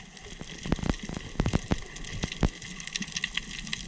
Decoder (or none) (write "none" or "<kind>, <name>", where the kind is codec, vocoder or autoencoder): none